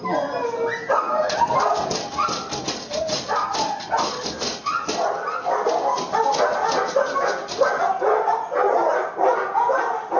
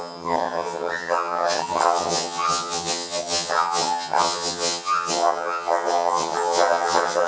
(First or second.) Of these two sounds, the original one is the first